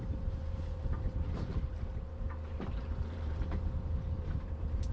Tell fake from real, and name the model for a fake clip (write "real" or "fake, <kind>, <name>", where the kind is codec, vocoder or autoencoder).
fake, vocoder, BigVGAN v2